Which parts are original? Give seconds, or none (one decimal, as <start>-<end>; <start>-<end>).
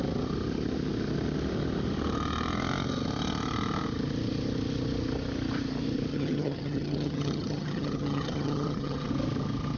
0.0-6.1; 9.1-9.8